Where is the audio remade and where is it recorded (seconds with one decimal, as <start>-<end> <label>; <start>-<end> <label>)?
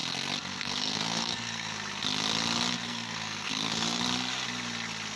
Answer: 0.0-1.8 remade; 1.8-2.7 recorded; 2.7-4.0 remade; 4.0-5.2 recorded